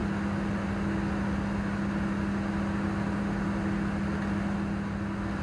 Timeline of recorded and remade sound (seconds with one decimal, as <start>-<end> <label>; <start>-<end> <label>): 0.0-5.4 recorded